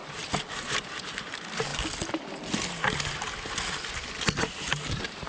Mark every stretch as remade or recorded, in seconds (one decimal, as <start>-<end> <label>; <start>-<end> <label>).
0.0-1.7 remade; 1.7-4.4 recorded; 4.4-5.3 remade